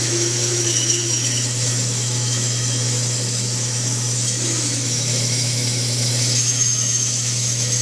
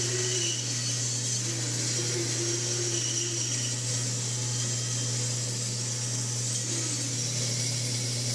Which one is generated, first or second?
first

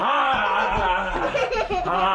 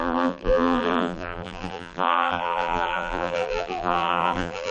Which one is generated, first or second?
second